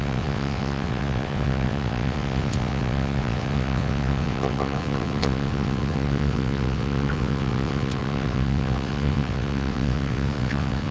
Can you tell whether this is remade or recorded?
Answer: remade